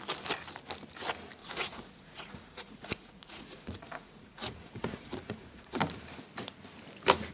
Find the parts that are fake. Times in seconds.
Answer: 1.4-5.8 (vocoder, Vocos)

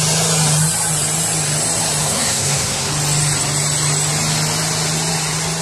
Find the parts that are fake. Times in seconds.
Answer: 2.0-2.9 (codec, SNAC)

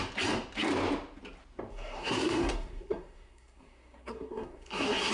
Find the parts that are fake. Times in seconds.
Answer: 1.7-5.1 (codec, SNAC)

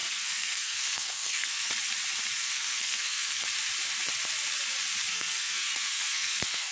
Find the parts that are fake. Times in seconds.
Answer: 0.0-1.7 (codec, SNAC); 2.4-3.4; 5.1-6.7